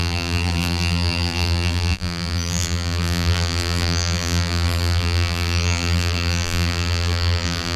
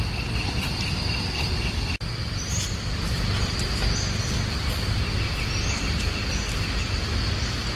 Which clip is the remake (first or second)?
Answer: first